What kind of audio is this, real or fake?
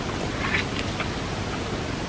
real